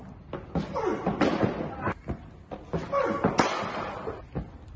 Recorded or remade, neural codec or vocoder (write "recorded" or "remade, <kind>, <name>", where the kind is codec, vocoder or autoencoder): recorded